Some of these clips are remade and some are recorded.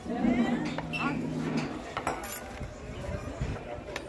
recorded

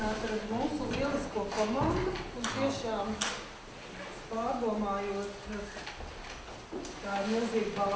recorded